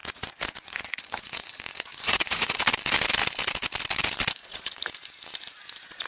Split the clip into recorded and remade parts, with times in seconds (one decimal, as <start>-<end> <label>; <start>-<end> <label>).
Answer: 0.0-2.6 remade; 2.6-4.4 recorded; 4.4-4.9 remade; 4.9-6.1 recorded